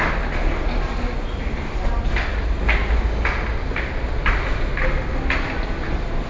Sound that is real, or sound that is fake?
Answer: real